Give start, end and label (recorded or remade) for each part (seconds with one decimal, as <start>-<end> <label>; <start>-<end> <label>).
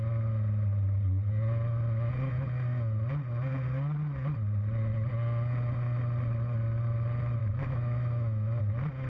0.0-7.4 recorded; 7.4-8.6 remade; 8.6-9.1 recorded